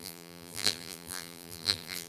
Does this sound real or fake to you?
fake